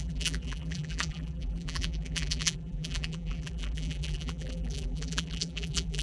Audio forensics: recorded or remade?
remade